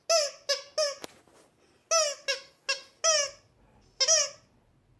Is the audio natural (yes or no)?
yes